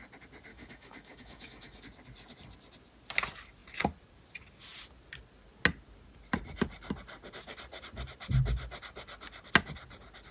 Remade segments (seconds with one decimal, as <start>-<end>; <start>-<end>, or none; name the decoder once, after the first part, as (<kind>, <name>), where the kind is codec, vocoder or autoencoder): 0.5-1.8 (autoencoder, DAC-VAE)